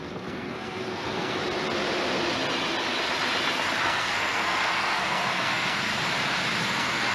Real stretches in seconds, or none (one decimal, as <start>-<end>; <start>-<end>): 1.4-3.8; 5.9-6.6